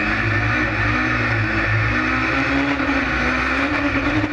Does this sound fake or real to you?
real